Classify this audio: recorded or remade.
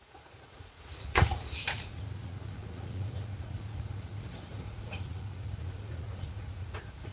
remade